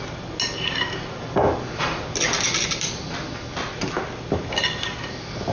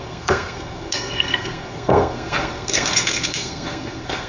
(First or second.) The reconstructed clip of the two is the second